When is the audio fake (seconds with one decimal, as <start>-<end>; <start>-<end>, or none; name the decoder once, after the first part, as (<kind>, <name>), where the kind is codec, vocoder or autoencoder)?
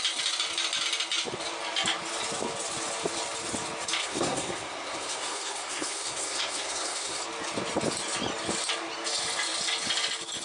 4.0-7.2 (codec, SNAC)